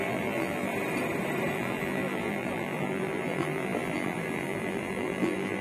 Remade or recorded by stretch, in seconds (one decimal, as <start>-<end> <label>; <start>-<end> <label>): 0.0-0.7 remade; 0.7-1.5 recorded; 1.5-5.6 remade